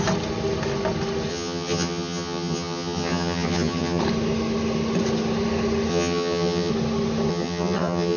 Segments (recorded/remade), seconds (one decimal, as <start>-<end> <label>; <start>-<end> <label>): 0.0-1.3 recorded; 1.3-4.0 remade; 4.0-5.9 recorded; 5.9-6.7 remade; 6.7-7.3 recorded; 7.3-8.2 remade